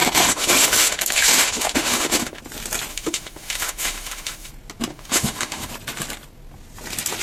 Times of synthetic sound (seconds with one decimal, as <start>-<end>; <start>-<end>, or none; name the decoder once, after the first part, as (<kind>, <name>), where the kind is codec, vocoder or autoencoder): 0.0-2.4 (autoencoder, DAC-VAE); 2.9-4.5; 4.9-5.7